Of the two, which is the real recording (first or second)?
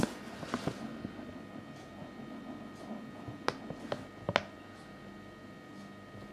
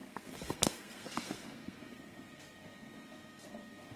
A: first